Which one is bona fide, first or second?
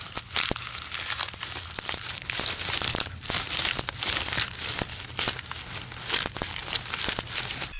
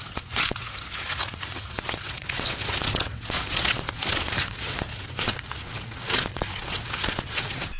first